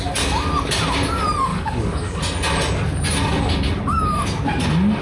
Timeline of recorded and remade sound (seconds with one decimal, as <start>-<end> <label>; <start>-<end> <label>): 0.0-1.5 recorded; 1.5-2.2 remade; 2.2-5.0 recorded